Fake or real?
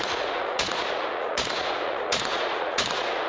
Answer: fake